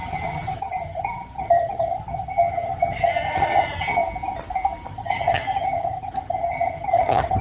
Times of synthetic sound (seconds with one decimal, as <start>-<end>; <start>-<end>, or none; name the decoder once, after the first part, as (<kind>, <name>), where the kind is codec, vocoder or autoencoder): 0.0-4.0 (vocoder, HiFi-GAN); 4.9-7.4